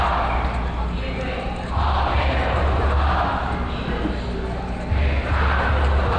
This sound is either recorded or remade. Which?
recorded